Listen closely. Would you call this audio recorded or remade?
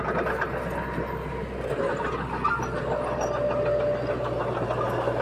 recorded